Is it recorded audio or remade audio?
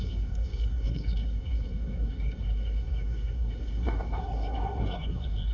remade